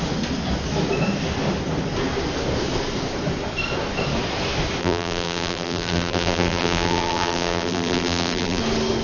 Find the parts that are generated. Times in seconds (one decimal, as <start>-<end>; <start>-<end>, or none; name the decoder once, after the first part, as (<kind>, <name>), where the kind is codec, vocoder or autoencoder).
4.8-8.6 (vocoder, BigVGAN v2)